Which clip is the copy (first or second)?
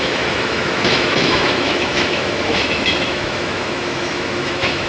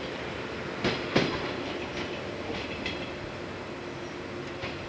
first